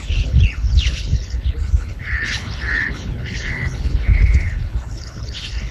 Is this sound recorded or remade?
remade